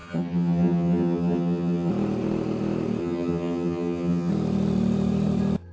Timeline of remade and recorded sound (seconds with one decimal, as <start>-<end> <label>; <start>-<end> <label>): 0.0-1.9 remade; 1.9-3.0 recorded; 3.0-4.3 remade; 4.3-5.7 recorded